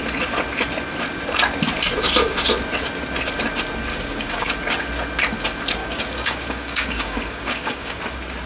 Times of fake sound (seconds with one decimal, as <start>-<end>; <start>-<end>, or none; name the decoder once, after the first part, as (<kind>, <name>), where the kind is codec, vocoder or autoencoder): 3.9-4.5 (codec, DAC); 5.8-8.0